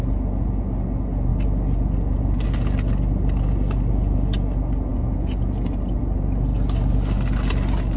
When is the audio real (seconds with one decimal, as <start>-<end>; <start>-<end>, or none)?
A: 0.0-8.0